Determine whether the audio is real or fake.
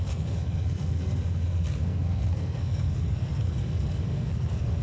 fake